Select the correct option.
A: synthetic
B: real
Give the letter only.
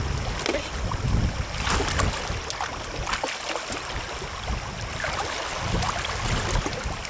B